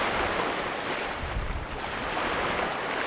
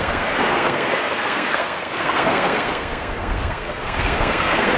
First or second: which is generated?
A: second